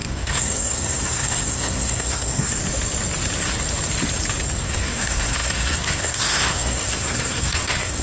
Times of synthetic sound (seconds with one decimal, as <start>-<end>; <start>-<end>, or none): 0.0-2.6; 4.6-8.0